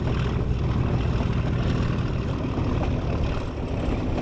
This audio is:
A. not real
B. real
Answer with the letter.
B